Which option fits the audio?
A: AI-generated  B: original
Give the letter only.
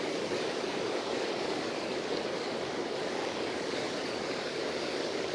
A